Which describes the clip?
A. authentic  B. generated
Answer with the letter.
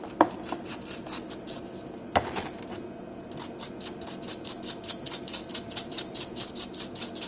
A